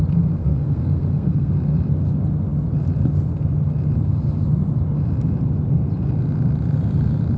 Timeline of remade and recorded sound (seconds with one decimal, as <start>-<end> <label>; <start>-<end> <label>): 0.0-0.4 recorded; 0.4-1.5 remade; 1.5-7.4 recorded